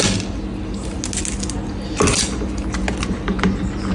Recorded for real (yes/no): yes